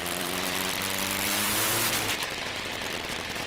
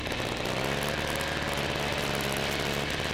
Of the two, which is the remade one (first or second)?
first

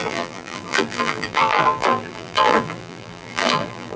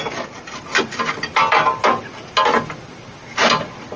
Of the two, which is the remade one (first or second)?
first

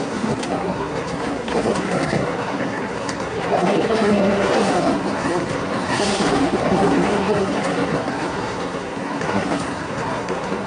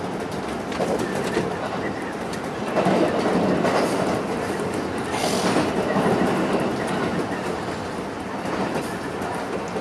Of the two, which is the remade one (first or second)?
first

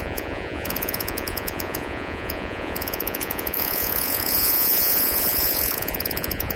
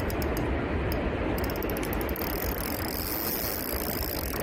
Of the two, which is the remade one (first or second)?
first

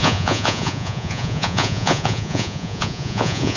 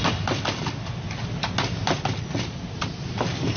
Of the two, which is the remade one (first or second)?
first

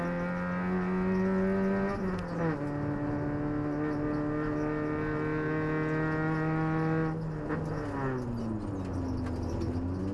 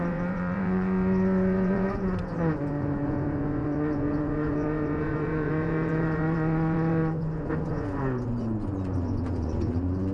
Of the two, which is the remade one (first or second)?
second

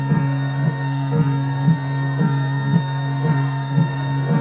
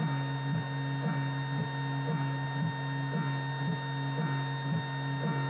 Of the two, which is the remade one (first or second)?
first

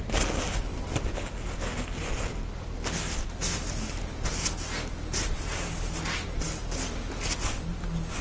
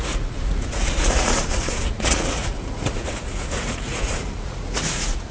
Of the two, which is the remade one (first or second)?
second